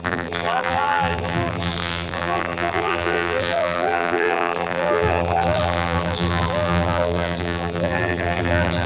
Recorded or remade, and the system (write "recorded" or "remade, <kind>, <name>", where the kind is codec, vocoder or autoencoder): remade, vocoder, BigVGAN v2